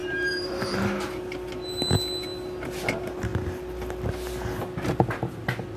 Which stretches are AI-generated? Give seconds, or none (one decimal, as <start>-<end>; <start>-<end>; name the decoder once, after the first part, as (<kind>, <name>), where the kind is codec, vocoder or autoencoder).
0.0-0.8 (vocoder, BigVGAN v2)